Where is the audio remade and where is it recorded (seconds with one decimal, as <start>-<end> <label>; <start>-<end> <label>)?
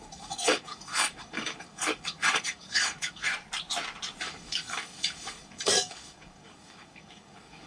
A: 0.0-3.3 remade; 3.3-4.2 recorded; 4.2-7.7 remade